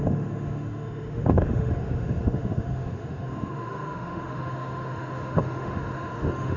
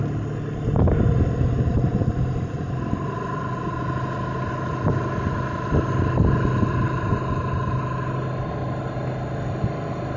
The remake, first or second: first